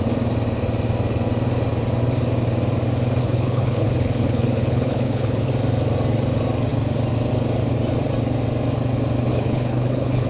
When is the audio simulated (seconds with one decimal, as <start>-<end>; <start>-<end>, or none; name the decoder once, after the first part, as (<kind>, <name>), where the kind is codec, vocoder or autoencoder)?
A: 3.2-5.5 (codec, HILCodec); 9.3-10.3